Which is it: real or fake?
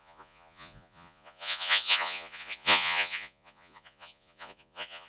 fake